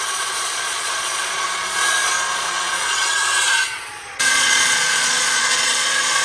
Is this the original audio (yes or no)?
no